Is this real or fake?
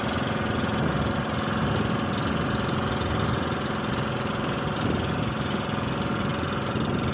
real